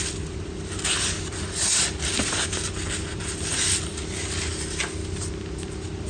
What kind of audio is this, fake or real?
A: real